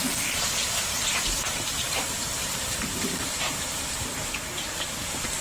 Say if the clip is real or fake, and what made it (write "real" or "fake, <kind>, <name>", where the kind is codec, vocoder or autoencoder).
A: fake, vocoder, BigVGAN v2